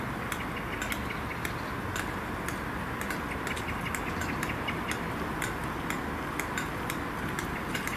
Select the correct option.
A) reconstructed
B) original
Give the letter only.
B